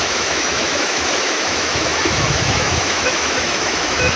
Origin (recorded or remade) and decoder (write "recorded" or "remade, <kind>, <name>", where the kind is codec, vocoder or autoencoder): remade, autoencoder, DAC-VAE